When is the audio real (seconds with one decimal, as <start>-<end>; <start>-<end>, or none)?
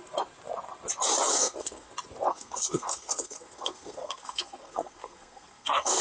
0.0-1.3; 1.9-2.3